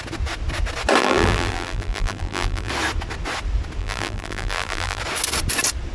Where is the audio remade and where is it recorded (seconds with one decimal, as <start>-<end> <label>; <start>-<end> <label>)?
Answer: 0.0-1.0 recorded; 1.0-2.7 remade; 2.7-3.8 recorded; 3.8-5.0 remade; 5.0-5.9 recorded